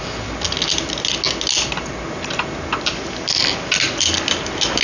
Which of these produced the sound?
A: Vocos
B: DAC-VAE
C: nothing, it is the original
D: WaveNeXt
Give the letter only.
C